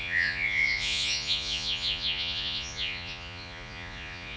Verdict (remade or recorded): remade